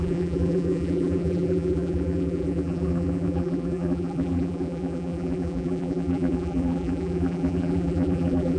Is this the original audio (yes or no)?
no